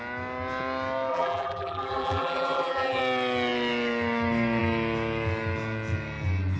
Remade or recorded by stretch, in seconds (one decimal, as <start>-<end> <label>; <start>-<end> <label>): 0.0-1.1 recorded; 1.1-3.0 remade; 3.0-6.6 recorded